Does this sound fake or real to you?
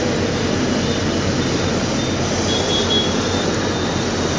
real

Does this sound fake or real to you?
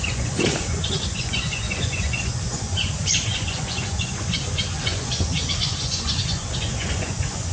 fake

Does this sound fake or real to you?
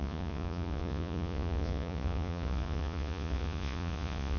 fake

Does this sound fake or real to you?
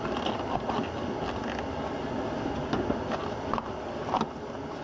real